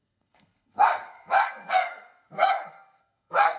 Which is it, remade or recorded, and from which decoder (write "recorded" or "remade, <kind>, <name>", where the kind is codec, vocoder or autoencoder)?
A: remade, codec, SNAC